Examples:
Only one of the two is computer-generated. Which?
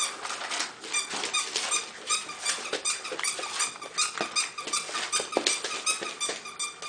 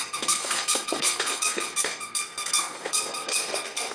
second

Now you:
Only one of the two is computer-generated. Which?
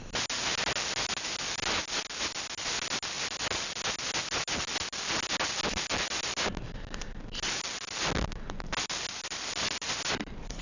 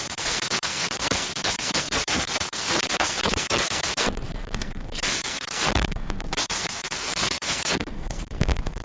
second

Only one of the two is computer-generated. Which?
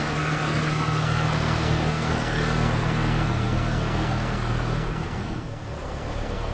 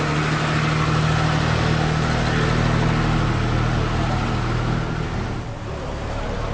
first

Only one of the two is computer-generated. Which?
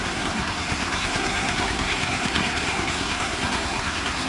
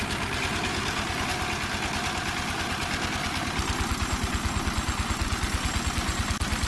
first